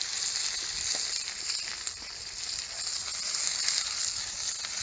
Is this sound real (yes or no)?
yes